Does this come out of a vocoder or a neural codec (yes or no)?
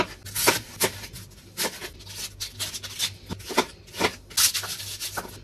no